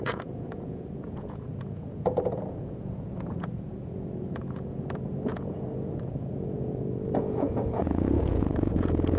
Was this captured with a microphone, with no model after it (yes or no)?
no